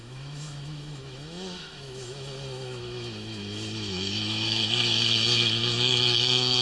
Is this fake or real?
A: fake